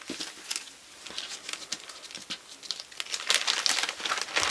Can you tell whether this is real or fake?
real